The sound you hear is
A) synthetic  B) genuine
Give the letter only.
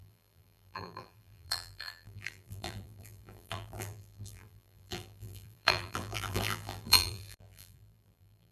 A